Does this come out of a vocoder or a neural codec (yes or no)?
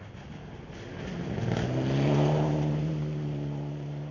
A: no